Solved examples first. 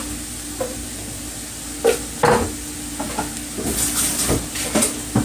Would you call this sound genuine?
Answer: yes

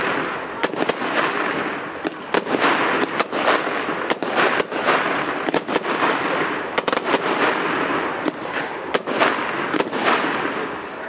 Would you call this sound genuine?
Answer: yes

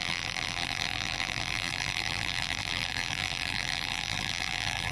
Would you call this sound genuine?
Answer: no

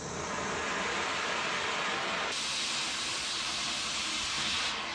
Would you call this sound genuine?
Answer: yes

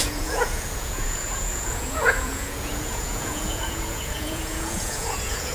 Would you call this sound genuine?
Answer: no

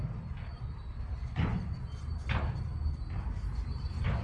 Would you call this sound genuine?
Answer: yes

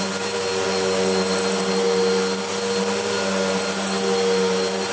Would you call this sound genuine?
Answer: yes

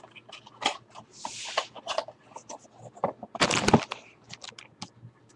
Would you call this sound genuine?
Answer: yes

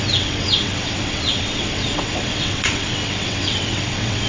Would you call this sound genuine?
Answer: no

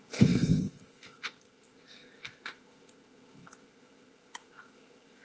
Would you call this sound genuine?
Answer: no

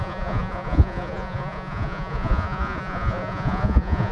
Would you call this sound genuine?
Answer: no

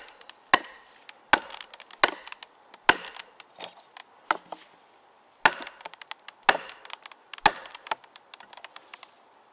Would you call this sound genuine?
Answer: yes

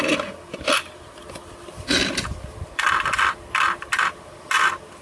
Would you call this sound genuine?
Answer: yes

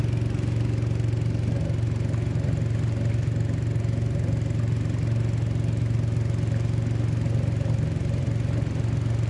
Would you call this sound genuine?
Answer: yes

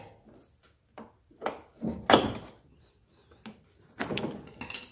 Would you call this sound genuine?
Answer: yes